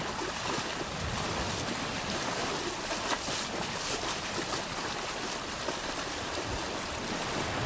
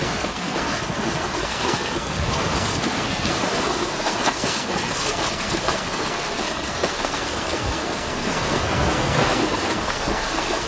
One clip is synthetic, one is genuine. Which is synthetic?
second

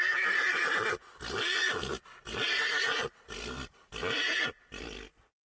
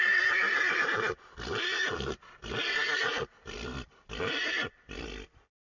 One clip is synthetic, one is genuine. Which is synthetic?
second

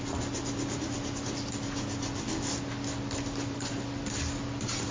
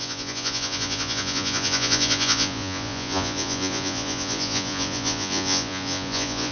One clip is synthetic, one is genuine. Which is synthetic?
second